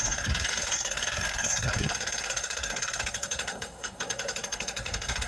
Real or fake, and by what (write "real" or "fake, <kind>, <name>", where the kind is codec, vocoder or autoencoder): fake, codec, SNAC